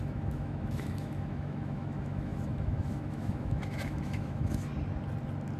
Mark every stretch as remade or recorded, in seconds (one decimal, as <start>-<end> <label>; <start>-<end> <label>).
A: 0.0-4.7 remade; 4.7-5.6 recorded